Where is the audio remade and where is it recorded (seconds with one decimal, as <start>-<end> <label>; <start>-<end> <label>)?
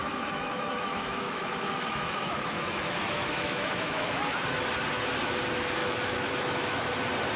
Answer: 0.0-4.1 remade; 4.1-5.8 recorded; 5.8-6.9 remade; 6.9-7.4 recorded